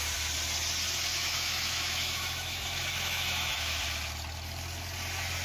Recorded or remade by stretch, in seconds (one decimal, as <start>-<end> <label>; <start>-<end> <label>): 0.0-1.1 recorded; 1.1-3.8 remade; 3.8-5.4 recorded